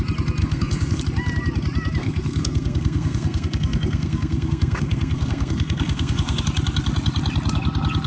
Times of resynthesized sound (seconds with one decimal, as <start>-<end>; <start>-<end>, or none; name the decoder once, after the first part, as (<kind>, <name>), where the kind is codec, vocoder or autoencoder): 0.4-1.0 (codec, SNAC); 2.0-6.4